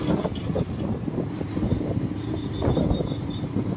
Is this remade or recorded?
remade